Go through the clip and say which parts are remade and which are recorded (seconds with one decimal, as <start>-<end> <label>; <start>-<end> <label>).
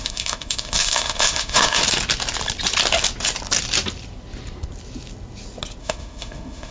0.0-1.8 remade; 1.8-5.8 recorded; 5.8-6.7 remade